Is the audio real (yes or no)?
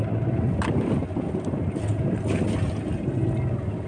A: yes